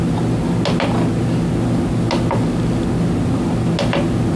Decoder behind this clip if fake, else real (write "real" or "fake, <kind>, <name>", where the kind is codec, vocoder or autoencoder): real